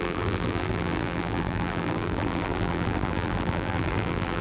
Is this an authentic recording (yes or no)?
no